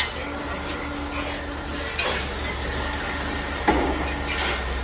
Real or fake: real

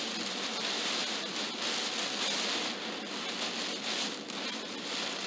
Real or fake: real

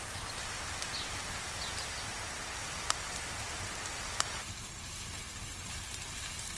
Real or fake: real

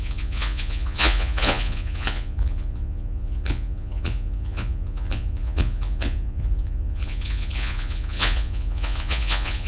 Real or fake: fake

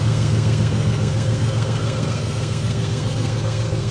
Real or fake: fake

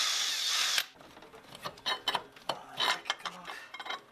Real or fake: real